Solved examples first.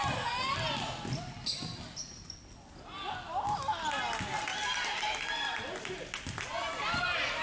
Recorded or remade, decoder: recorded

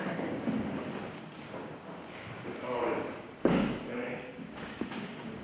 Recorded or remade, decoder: remade, codec, DAC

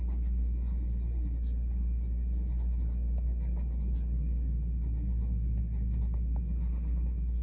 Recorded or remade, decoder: remade, codec, DAC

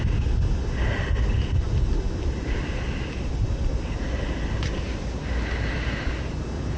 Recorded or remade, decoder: recorded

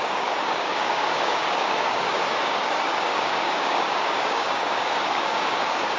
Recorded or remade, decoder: remade, codec, DAC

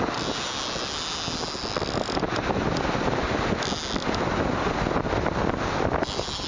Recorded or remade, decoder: recorded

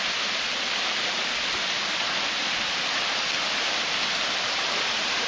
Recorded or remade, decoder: recorded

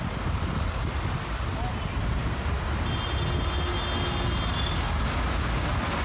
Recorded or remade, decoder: recorded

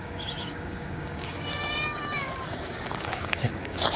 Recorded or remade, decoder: remade, codec, DAC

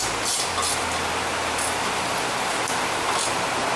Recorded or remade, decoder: recorded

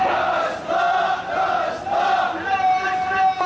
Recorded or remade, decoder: recorded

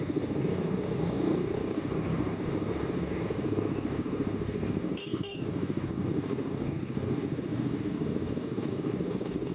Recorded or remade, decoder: remade, codec, DAC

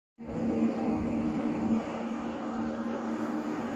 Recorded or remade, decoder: remade, codec, DAC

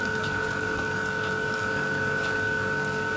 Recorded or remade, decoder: remade, codec, DAC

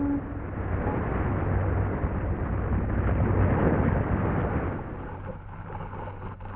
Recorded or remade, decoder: recorded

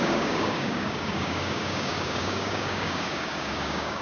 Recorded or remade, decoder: remade, codec, DAC